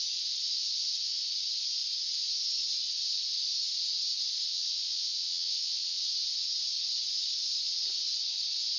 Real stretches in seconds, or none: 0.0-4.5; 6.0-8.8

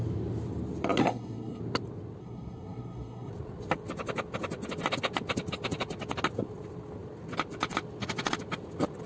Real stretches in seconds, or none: 0.0-1.0; 1.6-2.2; 3.3-9.1